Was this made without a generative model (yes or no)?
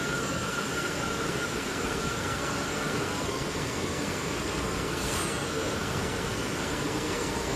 no